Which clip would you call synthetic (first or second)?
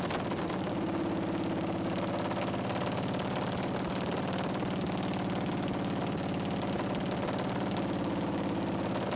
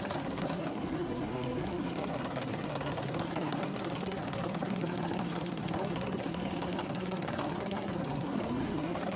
second